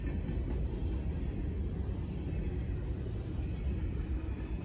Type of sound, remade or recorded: recorded